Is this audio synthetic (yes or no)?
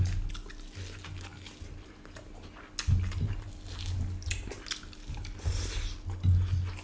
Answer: no